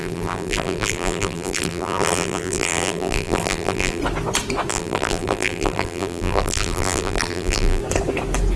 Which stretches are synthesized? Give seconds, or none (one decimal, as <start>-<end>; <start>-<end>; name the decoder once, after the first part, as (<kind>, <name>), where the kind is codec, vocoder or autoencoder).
0.0-4.0 (vocoder, BigVGAN v2); 4.7-7.8